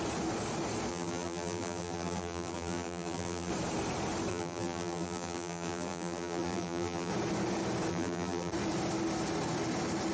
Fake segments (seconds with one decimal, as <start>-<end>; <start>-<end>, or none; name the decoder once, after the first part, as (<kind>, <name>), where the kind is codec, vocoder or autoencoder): 0.9-3.5 (vocoder, BigVGAN v2); 4.3-7.1; 7.9-8.5